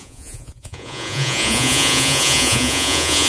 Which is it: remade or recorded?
remade